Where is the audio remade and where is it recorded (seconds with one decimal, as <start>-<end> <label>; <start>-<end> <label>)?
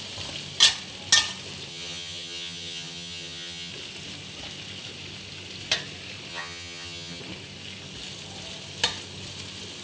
0.0-1.7 recorded; 1.7-3.7 remade; 3.7-6.3 recorded; 6.3-7.2 remade; 7.2-9.8 recorded